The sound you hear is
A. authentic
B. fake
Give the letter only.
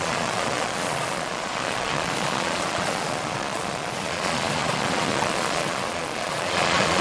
B